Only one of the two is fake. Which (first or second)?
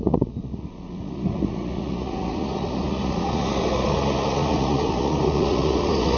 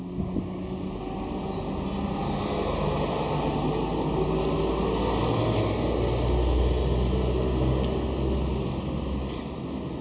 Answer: first